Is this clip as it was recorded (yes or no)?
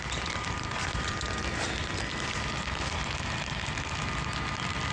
no